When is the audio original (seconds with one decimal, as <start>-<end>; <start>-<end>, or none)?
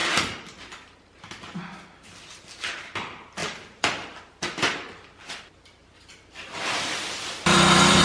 0.0-3.4; 4.3-5.8